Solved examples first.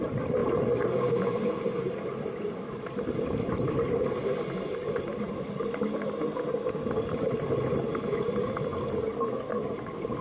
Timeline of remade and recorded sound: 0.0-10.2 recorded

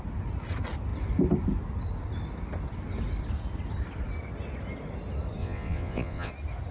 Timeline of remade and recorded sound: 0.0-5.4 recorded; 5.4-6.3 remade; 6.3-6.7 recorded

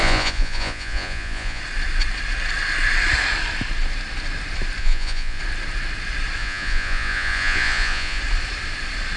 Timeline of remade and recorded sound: 0.0-1.6 remade; 1.6-4.8 recorded; 4.8-5.4 remade; 5.4-6.4 recorded; 6.4-8.2 remade; 8.2-9.2 recorded

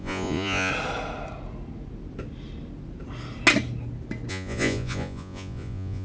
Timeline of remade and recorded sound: 0.0-0.7 remade; 0.7-4.3 recorded; 4.3-6.0 remade

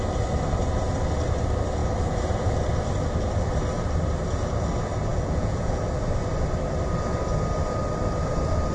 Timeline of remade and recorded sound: 0.0-5.1 recorded; 5.1-5.8 remade; 5.8-8.7 recorded

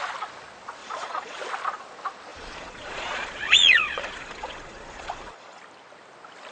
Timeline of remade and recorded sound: 0.0-0.8 recorded; 0.8-1.4 remade; 1.4-2.3 recorded; 2.3-5.6 remade; 5.6-6.5 recorded

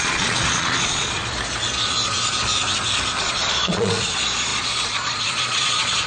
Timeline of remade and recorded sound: 0.0-1.2 remade; 1.2-3.2 recorded; 3.2-6.1 remade

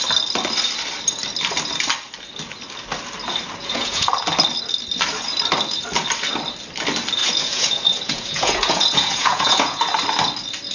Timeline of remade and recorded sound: 0.0-3.6 recorded; 3.6-4.1 remade; 4.1-7.2 recorded; 7.2-9.8 remade; 9.8-10.7 recorded